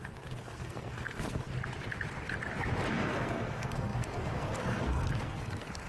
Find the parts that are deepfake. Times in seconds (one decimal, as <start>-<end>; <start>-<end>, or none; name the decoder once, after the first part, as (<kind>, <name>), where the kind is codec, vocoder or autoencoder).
0.0-1.5 (codec, SNAC); 2.9-5.9